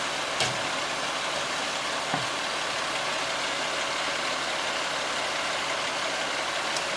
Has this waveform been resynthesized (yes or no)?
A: yes